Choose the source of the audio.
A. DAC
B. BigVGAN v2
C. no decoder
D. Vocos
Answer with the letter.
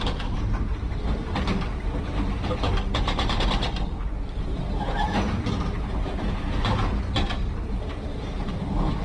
B